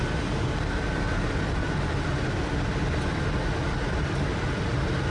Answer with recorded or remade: remade